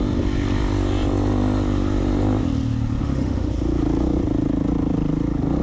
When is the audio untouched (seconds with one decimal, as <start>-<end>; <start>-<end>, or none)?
0.0-3.0; 3.5-5.6

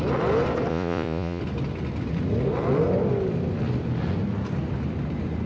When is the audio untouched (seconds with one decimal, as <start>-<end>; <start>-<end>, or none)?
0.0-0.7; 1.4-5.5

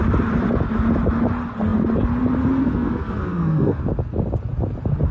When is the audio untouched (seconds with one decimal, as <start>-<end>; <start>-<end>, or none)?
0.0-2.6; 3.8-5.1

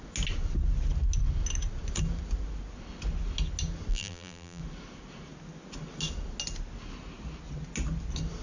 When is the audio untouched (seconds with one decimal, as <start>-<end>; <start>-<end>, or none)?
0.0-3.9; 4.6-8.4

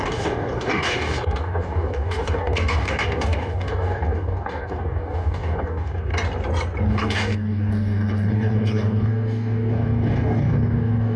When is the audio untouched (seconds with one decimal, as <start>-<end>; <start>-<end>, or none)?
6.1-6.9

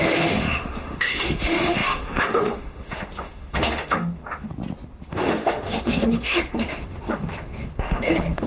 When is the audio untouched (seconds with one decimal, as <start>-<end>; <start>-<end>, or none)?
4.5-5.1

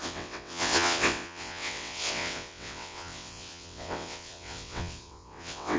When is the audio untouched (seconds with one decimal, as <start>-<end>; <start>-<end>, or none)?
none

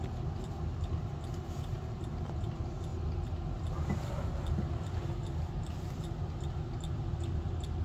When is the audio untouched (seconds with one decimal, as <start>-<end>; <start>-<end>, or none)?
0.0-7.8